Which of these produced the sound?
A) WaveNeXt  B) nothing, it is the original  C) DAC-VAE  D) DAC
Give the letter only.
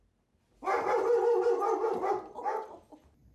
B